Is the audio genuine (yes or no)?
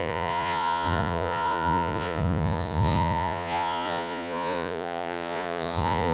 no